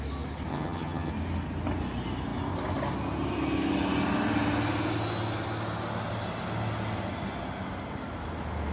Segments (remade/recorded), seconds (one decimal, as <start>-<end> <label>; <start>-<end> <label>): 0.0-0.5 recorded; 0.5-1.1 remade; 1.1-8.7 recorded